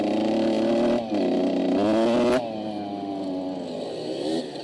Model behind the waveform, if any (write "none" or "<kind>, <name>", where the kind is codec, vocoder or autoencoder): none